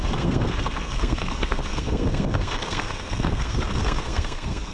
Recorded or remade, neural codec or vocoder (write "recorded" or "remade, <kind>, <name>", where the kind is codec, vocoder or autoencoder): remade, codec, SNAC